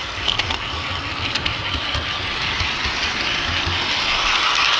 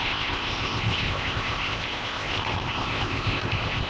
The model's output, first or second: second